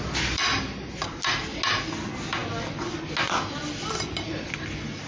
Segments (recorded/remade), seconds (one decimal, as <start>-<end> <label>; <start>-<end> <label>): 0.0-5.1 recorded